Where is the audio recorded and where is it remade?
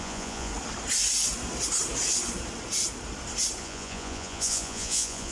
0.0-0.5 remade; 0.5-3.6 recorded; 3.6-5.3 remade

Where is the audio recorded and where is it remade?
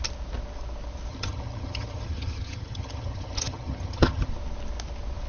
0.0-1.1 recorded; 1.1-4.3 remade; 4.3-5.3 recorded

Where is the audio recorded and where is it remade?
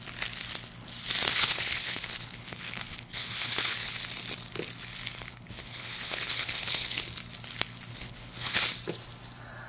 0.0-1.3 recorded; 1.3-3.9 remade; 3.9-5.3 recorded; 5.3-7.0 remade; 7.0-7.9 recorded; 7.9-8.6 remade; 8.6-9.7 recorded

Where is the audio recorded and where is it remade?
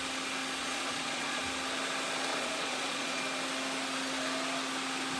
0.0-0.6 recorded; 0.6-1.4 remade; 1.4-2.3 recorded; 2.3-3.2 remade; 3.2-5.2 recorded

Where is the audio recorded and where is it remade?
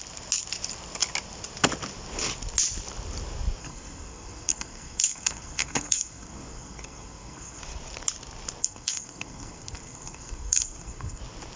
0.0-3.6 recorded; 3.6-7.6 remade; 7.6-8.6 recorded; 8.6-11.2 remade; 11.2-11.6 recorded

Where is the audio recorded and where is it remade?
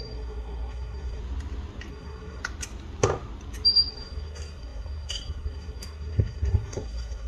0.0-1.2 remade; 1.2-1.9 recorded; 1.9-2.4 remade; 2.4-3.9 recorded; 3.9-7.3 remade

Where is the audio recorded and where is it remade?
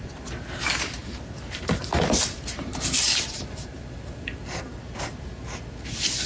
0.0-1.0 recorded; 1.0-4.8 remade; 4.8-6.3 recorded